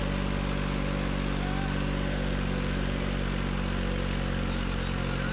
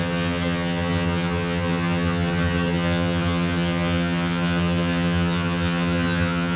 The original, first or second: first